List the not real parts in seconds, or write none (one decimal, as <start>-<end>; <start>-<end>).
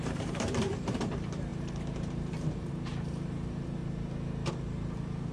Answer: 0.0-3.8; 4.5-5.3